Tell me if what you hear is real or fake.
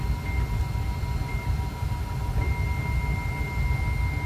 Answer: real